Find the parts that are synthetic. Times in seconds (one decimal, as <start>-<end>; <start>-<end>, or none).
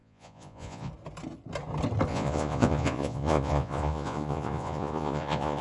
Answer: 0.0-0.9; 2.1-5.6